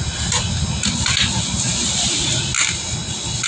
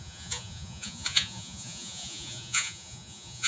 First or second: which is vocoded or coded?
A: second